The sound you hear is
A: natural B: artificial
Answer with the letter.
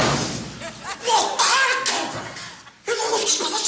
A